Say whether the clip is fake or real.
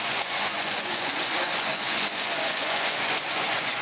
fake